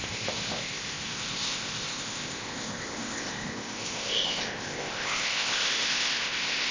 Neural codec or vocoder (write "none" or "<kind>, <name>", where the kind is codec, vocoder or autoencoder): codec, ZipCodec